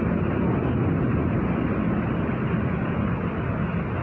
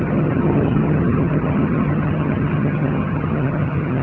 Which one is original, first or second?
first